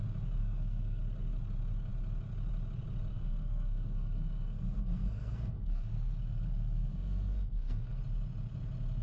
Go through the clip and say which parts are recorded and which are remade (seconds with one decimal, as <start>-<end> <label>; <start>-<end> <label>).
0.0-0.4 recorded; 0.4-1.0 remade; 1.0-3.1 recorded; 3.1-8.0 remade; 8.0-9.0 recorded